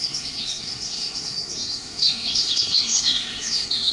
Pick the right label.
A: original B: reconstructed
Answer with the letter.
B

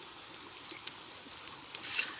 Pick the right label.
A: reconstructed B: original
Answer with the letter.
B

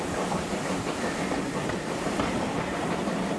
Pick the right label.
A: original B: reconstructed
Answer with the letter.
A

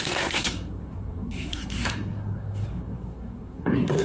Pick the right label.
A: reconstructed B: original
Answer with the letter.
A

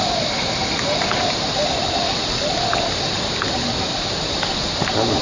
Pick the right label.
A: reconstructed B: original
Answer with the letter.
B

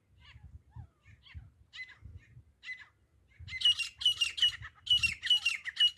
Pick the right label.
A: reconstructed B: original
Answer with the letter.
B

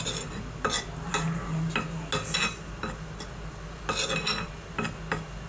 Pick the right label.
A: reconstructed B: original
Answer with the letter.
B